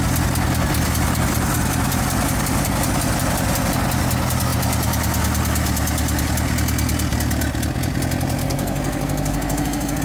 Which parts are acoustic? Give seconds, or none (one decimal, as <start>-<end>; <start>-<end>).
0.0-8.4

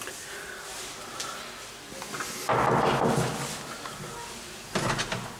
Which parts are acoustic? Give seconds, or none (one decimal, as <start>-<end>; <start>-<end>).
0.0-5.4

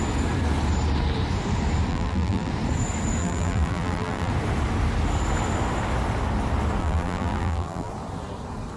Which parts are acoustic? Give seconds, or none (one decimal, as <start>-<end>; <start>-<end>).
0.0-1.9; 2.5-3.2; 4.3-6.8; 7.9-8.8

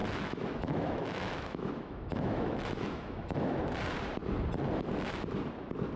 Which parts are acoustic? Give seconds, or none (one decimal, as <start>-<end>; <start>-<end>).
3.6-6.0

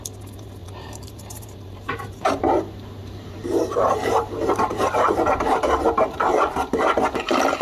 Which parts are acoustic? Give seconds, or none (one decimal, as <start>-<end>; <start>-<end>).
0.0-0.6; 2.4-3.0; 7.0-7.6

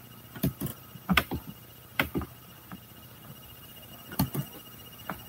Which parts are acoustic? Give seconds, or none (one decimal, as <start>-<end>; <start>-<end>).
0.0-0.7; 3.9-5.3